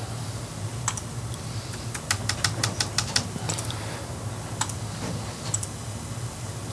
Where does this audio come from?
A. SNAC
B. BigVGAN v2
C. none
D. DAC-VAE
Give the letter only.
C